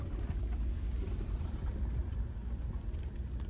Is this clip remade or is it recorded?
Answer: remade